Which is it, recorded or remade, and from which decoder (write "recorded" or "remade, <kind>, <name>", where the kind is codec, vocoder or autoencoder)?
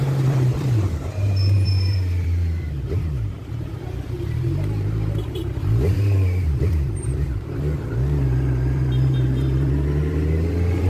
remade, vocoder, BigVGAN v2